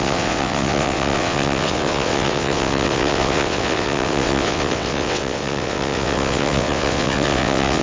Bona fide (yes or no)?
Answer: no